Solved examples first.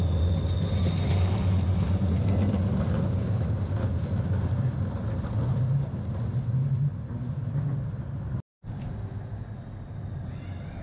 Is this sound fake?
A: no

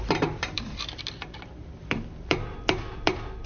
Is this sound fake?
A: yes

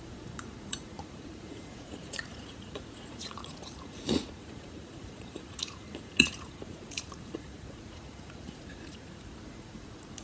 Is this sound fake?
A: yes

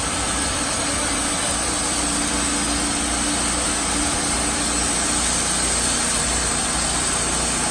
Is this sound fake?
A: no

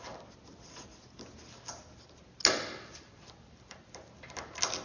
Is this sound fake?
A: no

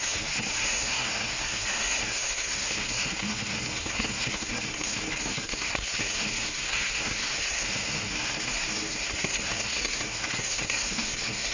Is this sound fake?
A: yes